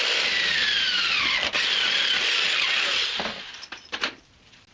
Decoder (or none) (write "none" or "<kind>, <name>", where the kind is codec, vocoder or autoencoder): none